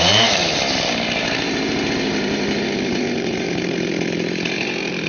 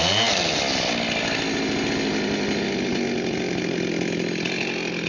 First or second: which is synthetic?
first